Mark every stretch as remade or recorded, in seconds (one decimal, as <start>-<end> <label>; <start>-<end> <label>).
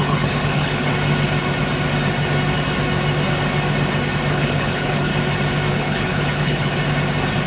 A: 0.0-0.9 remade; 0.9-4.3 recorded; 4.3-5.1 remade; 5.1-5.7 recorded; 5.7-6.8 remade; 6.8-7.5 recorded